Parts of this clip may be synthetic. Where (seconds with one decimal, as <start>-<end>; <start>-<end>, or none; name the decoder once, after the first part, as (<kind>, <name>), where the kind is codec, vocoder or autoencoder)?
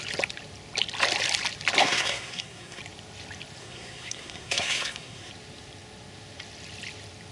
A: 1.8-2.8 (codec, SNAC); 3.6-5.3